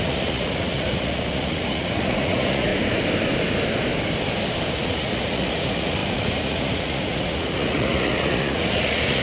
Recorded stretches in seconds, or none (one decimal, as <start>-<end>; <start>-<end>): 2.7-4.7